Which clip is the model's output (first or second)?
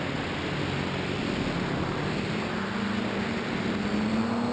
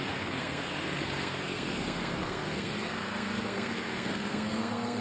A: second